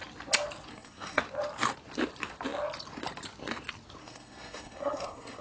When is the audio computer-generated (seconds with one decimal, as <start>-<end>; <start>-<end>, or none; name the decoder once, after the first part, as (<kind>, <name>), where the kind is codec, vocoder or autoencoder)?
0.7-1.2 (codec, SNAC); 4.0-5.4